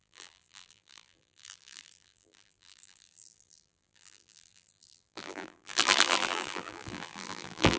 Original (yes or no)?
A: no